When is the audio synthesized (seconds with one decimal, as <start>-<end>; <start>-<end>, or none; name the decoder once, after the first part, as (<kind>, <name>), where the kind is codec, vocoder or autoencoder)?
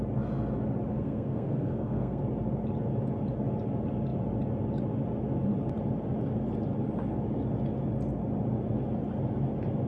0.9-2.2 (codec, SNAC)